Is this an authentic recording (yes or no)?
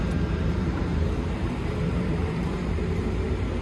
no